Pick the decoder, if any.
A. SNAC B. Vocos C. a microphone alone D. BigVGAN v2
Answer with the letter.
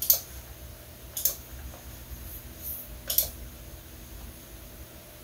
C